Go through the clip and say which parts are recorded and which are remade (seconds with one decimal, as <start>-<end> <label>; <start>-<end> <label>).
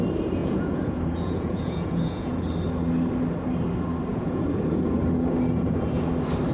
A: 0.0-0.4 recorded; 0.4-2.4 remade; 2.4-4.1 recorded; 4.1-6.1 remade; 6.1-6.5 recorded